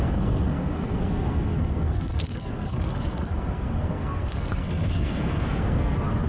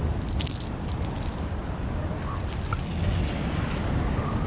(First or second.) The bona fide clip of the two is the second